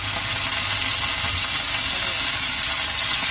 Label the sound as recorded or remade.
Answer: recorded